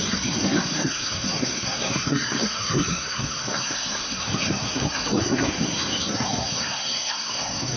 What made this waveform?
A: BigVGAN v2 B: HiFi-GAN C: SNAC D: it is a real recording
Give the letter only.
C